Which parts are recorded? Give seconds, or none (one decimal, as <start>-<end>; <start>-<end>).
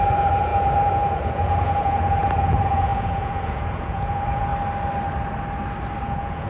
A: 4.5-6.0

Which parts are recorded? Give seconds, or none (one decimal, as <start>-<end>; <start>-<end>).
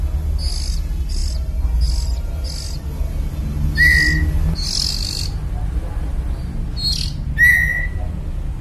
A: 0.0-8.6